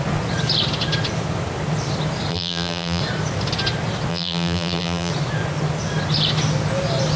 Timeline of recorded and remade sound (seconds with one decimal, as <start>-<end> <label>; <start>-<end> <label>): 0.0-2.3 recorded; 2.3-3.0 remade; 3.0-4.1 recorded; 4.1-5.1 remade; 5.1-7.2 recorded